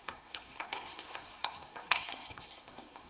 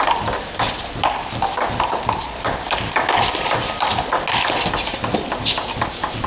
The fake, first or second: first